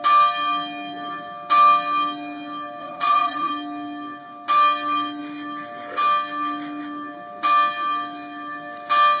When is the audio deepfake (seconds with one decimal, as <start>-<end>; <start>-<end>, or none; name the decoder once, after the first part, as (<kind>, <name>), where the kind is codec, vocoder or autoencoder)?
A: 2.8-3.5 (vocoder, Vocos)